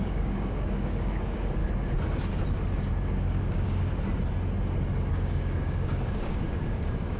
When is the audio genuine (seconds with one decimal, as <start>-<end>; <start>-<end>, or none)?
1.6-2.9; 3.9-5.1